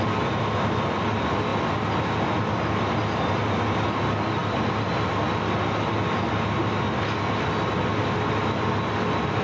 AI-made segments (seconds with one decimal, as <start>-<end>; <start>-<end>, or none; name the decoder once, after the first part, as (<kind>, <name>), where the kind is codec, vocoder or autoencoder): none